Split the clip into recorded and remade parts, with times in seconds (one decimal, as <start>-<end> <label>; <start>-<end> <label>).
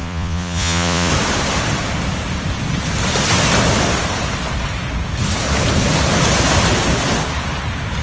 0.0-1.1 remade; 1.1-8.0 recorded